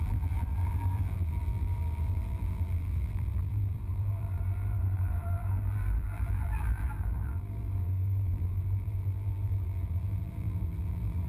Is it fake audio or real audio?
fake